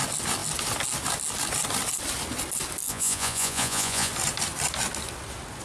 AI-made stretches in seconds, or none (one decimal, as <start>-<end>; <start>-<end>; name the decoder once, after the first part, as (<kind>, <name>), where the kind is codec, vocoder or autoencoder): 2.9-4.1 (vocoder, Vocos)